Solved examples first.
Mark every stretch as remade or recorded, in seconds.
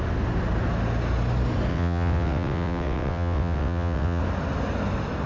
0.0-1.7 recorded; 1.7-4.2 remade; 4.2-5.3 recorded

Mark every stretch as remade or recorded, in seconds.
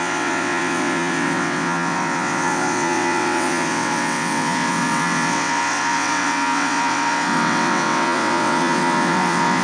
0.0-9.6 remade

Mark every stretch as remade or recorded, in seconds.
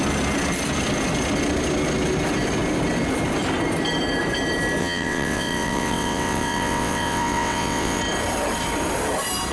0.0-4.8 recorded; 4.8-8.0 remade; 8.0-9.5 recorded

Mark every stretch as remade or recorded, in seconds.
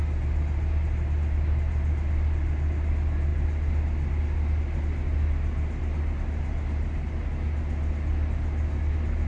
0.0-9.3 recorded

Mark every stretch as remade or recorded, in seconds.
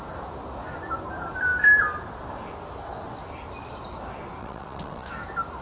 0.0-4.4 recorded; 4.4-5.1 remade; 5.1-5.6 recorded